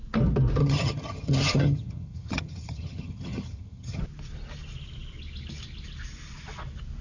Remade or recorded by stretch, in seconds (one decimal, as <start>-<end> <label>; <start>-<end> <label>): 0.0-0.6 recorded; 0.6-4.0 remade; 4.0-7.0 recorded